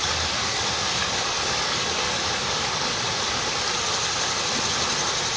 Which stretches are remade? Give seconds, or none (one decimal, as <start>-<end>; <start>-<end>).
0.0-0.6; 1.0-3.0